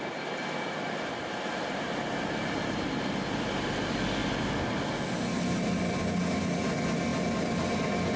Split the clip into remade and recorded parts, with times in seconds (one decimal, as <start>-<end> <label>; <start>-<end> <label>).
0.0-8.2 recorded